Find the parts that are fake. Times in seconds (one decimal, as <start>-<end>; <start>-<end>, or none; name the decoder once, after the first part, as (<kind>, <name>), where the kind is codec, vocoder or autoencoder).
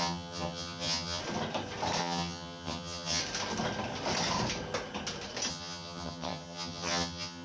0.0-1.2 (vocoder, HiFi-GAN); 2.0-3.2; 5.5-7.4